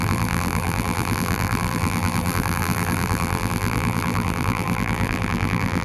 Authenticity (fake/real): fake